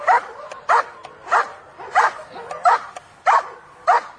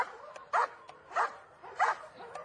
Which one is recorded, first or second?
first